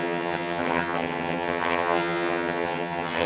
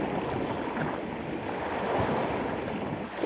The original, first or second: second